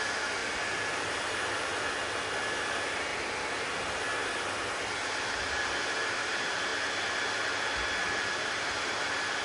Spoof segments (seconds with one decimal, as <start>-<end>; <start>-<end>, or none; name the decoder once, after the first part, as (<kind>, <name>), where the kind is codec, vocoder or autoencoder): 0.0-0.4 (vocoder, BigVGAN v2); 0.9-1.7; 2.4-3.1; 4.7-6.7; 8.1-9.4